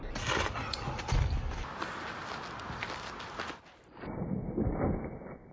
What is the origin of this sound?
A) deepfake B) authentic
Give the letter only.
B